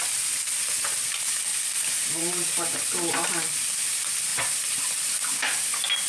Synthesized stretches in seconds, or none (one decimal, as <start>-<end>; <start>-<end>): 1.5-2.7